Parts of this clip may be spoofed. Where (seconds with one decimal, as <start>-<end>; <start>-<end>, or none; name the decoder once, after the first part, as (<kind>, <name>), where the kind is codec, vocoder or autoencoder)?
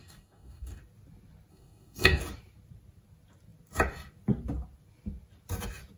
0.0-0.8 (codec, DAC); 1.5-2.2